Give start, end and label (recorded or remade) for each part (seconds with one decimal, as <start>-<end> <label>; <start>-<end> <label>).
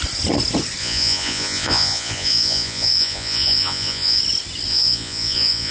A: 0.0-0.8 recorded; 0.8-4.2 remade; 4.2-4.7 recorded; 4.7-5.7 remade